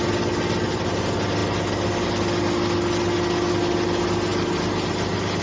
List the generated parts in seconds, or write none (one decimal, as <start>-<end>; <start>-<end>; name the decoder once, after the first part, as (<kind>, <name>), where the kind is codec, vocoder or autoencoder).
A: none